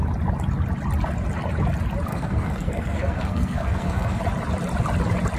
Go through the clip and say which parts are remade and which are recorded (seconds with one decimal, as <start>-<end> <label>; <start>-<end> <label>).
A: 0.0-2.1 recorded; 2.1-4.2 remade; 4.2-5.4 recorded

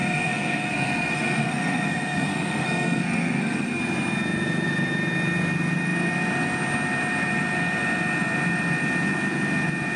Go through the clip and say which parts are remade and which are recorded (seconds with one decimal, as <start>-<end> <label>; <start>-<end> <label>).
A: 0.0-3.8 remade; 3.8-10.0 recorded

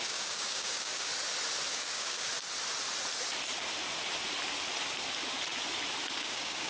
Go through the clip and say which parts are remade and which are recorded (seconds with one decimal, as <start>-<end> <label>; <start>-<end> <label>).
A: 0.0-1.1 remade; 1.1-1.7 recorded; 1.7-2.3 remade; 2.3-6.2 recorded; 6.2-6.7 remade

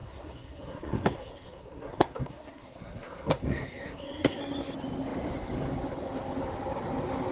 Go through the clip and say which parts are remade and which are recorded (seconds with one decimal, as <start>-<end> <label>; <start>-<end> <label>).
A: 0.0-4.4 remade; 4.4-7.3 recorded